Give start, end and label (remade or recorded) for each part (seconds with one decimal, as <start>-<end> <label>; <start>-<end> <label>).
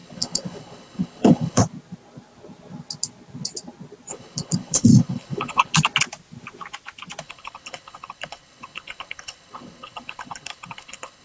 0.0-1.6 remade; 1.6-4.1 recorded; 4.1-5.7 remade; 5.7-7.2 recorded; 7.2-11.2 remade